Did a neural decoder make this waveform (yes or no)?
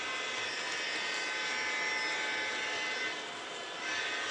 no